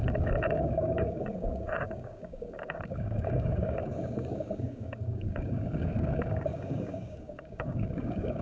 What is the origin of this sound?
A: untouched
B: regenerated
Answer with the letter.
B